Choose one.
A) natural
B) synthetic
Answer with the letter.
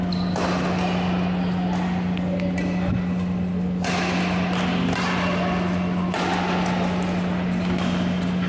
A